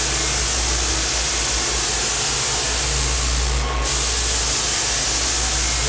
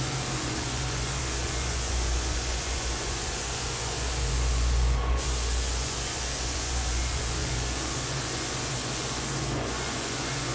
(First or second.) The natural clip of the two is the first